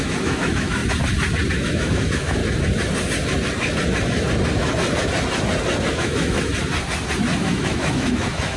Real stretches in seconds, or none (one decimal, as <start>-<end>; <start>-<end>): 0.8-1.5; 2.4-5.9; 6.5-7.4